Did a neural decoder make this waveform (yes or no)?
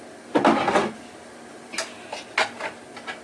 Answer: no